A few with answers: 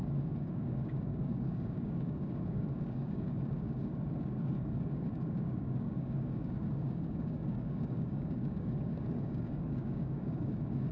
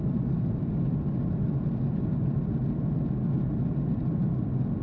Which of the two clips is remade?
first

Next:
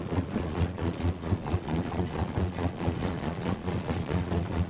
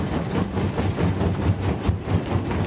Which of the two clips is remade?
first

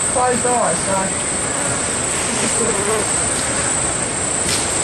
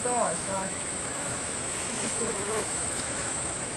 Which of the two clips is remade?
second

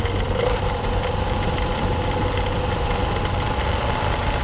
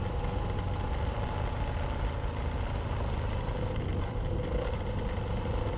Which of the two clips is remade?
first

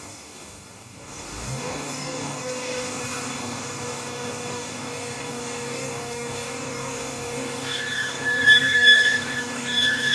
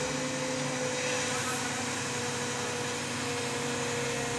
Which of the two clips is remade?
first